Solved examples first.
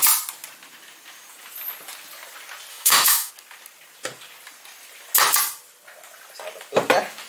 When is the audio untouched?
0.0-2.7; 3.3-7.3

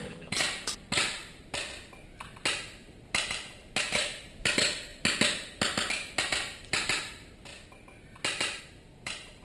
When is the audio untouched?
1.2-2.7; 4.9-6.2; 7.5-8.6

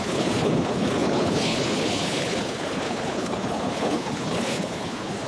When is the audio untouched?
none

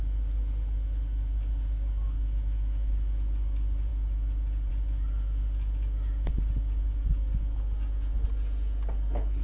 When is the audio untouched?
0.0-9.4

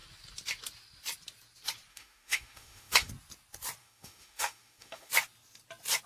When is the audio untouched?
0.0-1.9; 3.1-3.8; 5.1-6.1

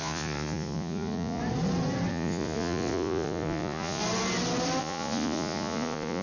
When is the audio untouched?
1.4-2.1; 4.0-4.8

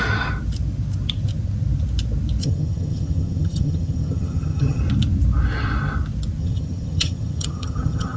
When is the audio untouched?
0.0-2.4; 4.8-6.4